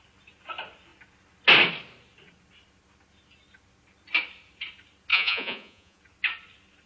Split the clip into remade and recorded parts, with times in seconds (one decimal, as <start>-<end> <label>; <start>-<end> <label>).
0.0-5.1 recorded; 5.1-6.0 remade; 6.0-6.9 recorded